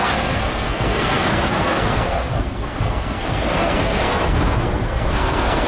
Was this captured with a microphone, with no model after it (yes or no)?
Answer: no